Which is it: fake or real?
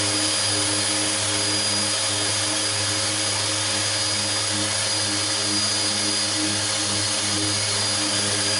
real